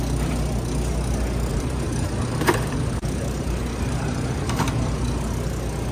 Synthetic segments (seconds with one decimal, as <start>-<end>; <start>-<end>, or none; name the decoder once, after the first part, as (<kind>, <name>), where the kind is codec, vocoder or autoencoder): 1.5-4.6 (vocoder, BigVGAN v2)